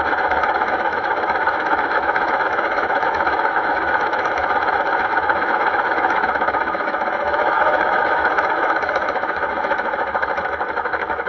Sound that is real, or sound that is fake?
fake